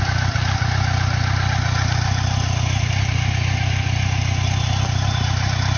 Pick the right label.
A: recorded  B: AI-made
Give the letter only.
A